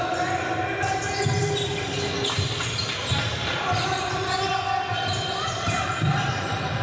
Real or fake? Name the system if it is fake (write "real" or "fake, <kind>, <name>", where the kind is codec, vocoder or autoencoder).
real